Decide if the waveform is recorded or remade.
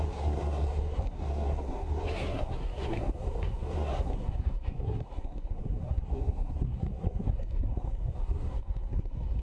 remade